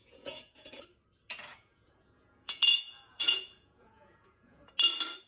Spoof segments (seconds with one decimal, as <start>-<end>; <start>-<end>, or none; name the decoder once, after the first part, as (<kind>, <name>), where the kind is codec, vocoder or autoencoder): 0.0-0.8 (vocoder, Vocos); 1.5-4.7